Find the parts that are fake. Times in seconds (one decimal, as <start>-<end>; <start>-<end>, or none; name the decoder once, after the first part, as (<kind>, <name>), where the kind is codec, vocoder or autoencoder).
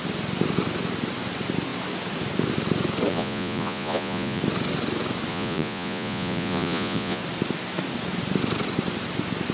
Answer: 3.1-4.4 (vocoder, Vocos); 5.3-7.2